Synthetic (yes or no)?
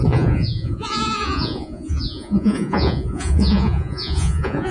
yes